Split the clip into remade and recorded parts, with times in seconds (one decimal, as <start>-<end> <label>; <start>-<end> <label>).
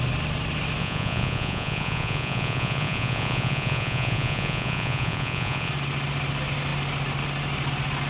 0.0-0.8 recorded; 0.8-5.7 remade; 5.7-8.1 recorded